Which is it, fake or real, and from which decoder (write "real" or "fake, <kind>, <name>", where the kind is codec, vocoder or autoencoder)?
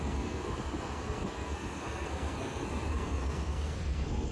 fake, codec, SNAC